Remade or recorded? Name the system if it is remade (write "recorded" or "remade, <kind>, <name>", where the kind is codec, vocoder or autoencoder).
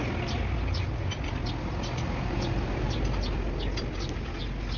recorded